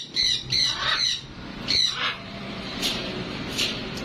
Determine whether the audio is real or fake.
fake